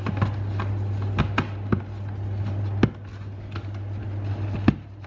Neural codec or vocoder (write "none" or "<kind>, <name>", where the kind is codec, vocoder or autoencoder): none